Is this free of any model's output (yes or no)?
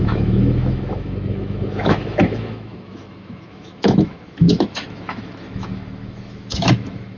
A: no